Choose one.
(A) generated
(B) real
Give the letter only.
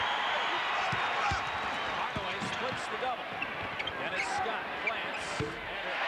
A